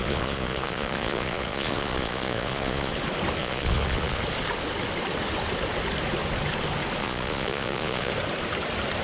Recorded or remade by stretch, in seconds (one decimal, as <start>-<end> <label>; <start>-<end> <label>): 0.0-2.9 remade; 2.9-3.4 recorded; 3.4-4.2 remade; 4.2-7.0 recorded; 7.0-8.1 remade; 8.1-9.0 recorded